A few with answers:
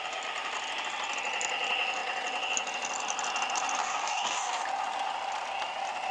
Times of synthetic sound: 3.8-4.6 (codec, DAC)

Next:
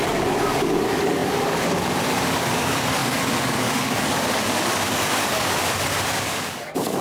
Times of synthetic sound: 0.0-7.0 (codec, DAC)

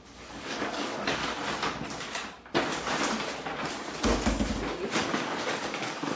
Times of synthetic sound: 0.0-1.2 (codec, DAC); 4.9-6.2

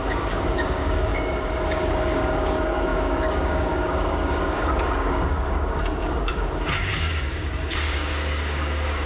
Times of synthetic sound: 0.0-9.1 (codec, DAC)

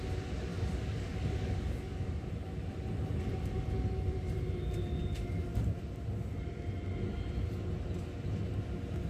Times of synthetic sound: 0.5-2.3 (codec, DAC)

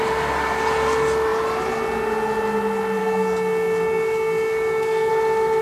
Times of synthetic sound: 3.0-5.1 (codec, DAC)

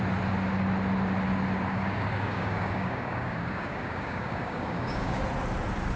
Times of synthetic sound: 1.7-5.2 (codec, DAC)